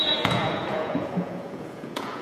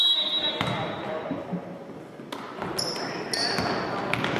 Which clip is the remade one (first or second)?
first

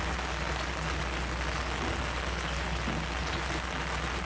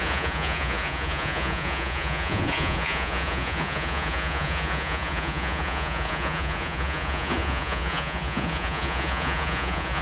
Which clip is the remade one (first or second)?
second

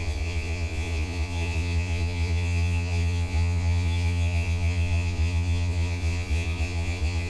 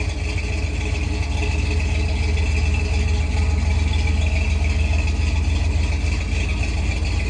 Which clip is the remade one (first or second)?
first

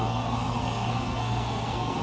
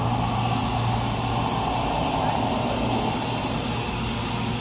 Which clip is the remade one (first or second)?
first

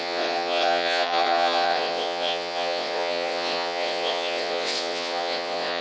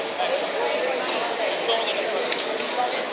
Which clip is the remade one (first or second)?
first